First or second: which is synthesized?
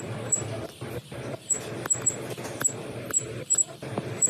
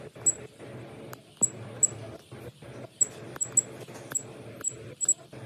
first